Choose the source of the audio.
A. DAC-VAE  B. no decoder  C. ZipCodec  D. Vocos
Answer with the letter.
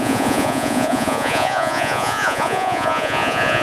D